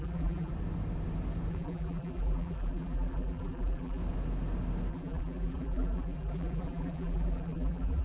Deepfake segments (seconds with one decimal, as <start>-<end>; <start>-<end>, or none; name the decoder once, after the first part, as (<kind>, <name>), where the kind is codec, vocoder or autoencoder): 0.0-0.5 (vocoder, BigVGAN v2); 1.5-4.0; 4.9-8.0